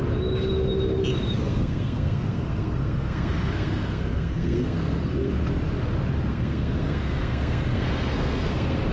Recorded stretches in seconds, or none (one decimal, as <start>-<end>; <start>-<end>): 0.0-1.4; 5.3-6.3